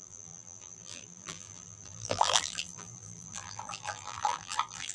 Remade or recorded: remade